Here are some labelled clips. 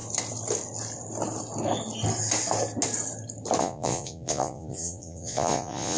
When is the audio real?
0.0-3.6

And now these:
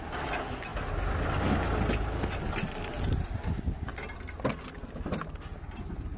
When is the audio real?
0.0-6.2

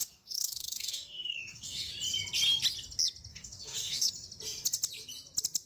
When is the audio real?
1.9-3.3; 4.1-5.7

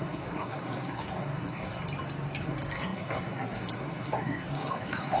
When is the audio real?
1.8-2.4

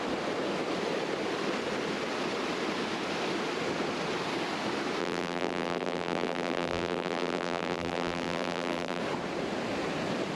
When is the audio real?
0.0-5.0; 9.0-10.4

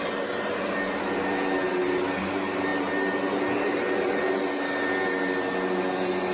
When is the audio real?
0.0-6.3

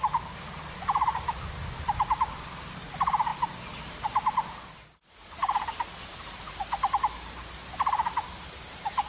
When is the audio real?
0.0-9.1

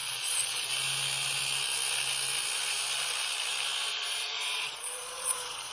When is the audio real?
0.7-3.9